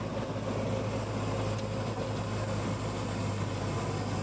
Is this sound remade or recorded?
recorded